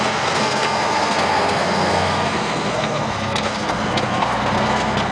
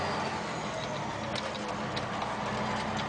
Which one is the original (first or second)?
second